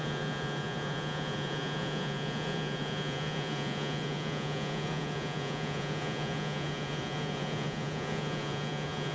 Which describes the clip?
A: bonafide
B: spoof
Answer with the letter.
B